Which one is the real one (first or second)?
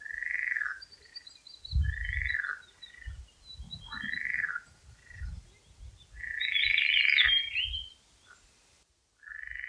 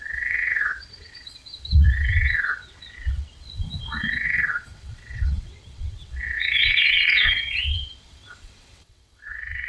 first